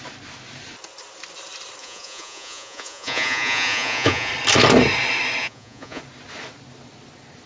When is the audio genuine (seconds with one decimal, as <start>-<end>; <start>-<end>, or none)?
0.0-1.8; 4.3-5.4; 6.0-7.5